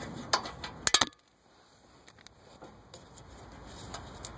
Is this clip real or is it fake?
real